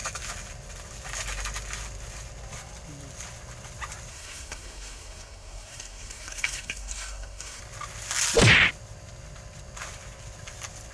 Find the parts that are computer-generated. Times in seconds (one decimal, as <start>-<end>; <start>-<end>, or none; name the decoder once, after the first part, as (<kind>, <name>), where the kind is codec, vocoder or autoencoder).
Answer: 4.1-7.6 (codec, SNAC)